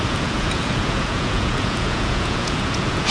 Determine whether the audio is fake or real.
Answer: fake